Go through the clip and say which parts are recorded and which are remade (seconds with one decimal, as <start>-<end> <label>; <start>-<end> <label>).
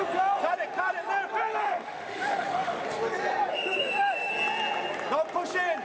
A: 0.0-1.6 recorded; 1.6-2.8 remade; 2.8-3.5 recorded; 3.5-4.3 remade; 4.3-5.8 recorded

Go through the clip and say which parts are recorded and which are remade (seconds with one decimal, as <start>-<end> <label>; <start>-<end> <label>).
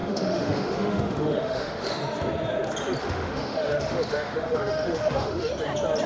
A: 0.0-2.0 remade; 2.0-3.0 recorded; 3.0-5.5 remade; 5.5-6.1 recorded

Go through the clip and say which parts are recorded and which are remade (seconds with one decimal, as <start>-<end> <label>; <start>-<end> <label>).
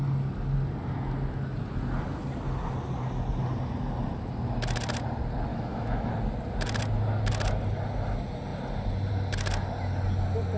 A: 0.0-5.5 recorded; 5.5-6.1 remade; 6.1-10.6 recorded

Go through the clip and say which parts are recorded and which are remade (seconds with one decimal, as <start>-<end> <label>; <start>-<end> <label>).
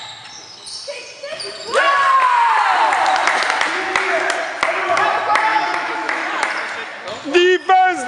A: 0.0-5.5 recorded; 5.5-6.2 remade; 6.2-8.1 recorded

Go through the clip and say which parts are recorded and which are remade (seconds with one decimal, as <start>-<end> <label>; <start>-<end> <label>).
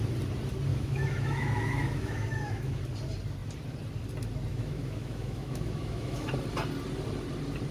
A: 0.0-0.7 recorded; 0.7-2.8 remade; 2.8-4.5 recorded; 4.5-6.3 remade; 6.3-7.7 recorded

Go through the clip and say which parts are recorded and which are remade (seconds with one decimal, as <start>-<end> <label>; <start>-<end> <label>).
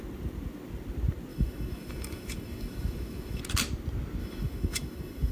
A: 0.0-1.3 recorded; 1.3-3.4 remade; 3.4-4.2 recorded; 4.2-5.3 remade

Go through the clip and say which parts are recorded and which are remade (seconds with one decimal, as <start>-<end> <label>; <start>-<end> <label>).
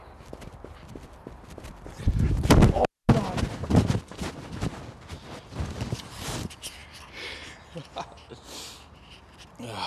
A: 0.0-9.9 recorded